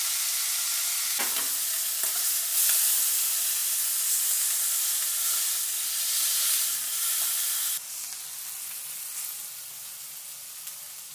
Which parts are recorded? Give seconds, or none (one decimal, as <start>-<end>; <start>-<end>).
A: 0.0-11.1